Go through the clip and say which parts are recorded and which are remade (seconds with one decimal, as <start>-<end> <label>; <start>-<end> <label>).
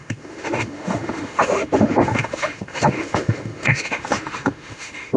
0.0-5.2 remade